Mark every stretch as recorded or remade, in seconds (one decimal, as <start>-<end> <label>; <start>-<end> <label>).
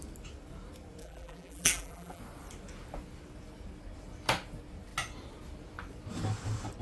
0.0-1.0 recorded; 1.0-2.2 remade; 2.2-6.8 recorded